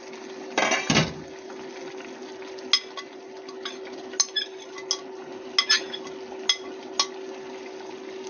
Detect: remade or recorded recorded